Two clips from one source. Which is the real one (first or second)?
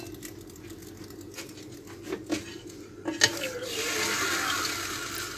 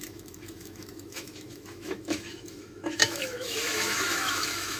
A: first